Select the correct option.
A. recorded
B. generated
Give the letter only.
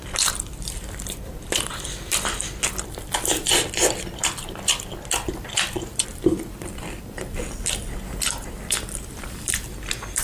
B